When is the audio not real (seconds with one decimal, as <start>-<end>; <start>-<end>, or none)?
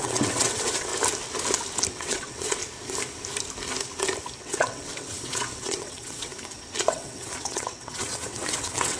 0.0-0.9; 1.9-2.6; 4.4-6.3; 6.9-9.0